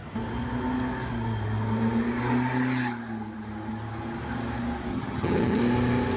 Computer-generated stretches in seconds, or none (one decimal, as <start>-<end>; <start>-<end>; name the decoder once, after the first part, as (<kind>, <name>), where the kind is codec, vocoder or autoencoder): 4.9-5.6 (vocoder, HiFi-GAN)